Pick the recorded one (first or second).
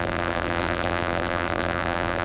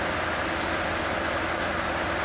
second